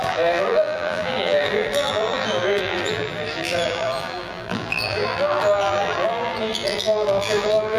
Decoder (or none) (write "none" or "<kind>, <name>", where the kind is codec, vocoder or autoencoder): vocoder, BigVGAN v2